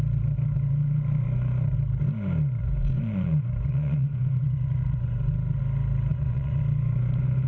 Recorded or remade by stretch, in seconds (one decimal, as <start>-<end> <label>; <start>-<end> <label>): 0.0-2.6 recorded; 2.6-5.3 remade; 5.3-6.1 recorded; 6.1-6.6 remade; 6.6-7.5 recorded